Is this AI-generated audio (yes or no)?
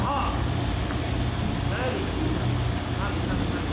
no